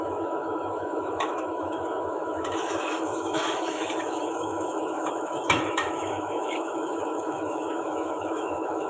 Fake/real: fake